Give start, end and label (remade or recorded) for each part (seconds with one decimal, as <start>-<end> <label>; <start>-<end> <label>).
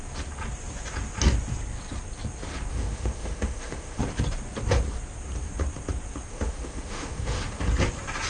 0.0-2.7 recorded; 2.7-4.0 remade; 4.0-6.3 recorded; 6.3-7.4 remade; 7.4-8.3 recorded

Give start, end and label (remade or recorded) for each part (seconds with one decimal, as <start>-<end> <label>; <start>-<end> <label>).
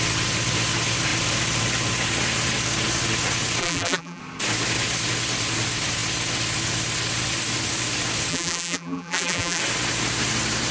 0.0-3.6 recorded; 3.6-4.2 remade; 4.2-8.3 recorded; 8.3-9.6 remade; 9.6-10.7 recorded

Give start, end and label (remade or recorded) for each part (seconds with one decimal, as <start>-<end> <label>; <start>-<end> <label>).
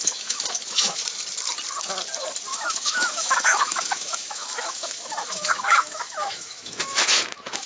0.0-1.0 remade; 1.0-2.5 recorded; 2.5-7.7 remade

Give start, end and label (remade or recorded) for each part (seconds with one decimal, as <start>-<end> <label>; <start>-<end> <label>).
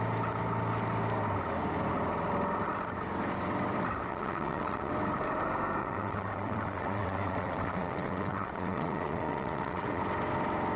0.0-4.1 recorded; 4.1-4.9 remade; 4.9-5.8 recorded; 5.8-10.0 remade; 10.0-10.8 recorded